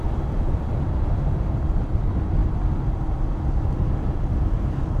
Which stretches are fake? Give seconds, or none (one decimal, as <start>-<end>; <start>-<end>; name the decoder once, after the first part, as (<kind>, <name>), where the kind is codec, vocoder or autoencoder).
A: none